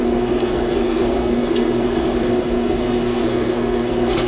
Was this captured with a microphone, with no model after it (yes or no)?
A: no